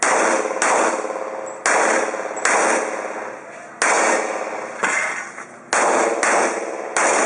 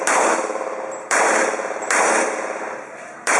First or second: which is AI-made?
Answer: second